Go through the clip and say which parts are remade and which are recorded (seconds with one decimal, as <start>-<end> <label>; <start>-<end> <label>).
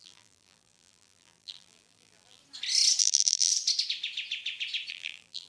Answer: 0.0-2.4 remade; 2.4-3.0 recorded; 3.0-3.5 remade; 3.5-4.9 recorded; 4.9-5.5 remade